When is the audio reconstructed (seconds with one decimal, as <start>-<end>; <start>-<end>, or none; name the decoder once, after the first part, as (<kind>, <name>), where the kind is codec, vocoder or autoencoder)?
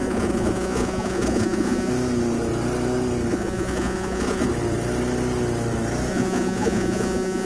0.0-1.9 (vocoder, Vocos); 3.3-4.5; 6.1-7.5